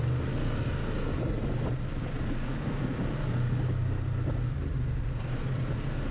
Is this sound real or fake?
real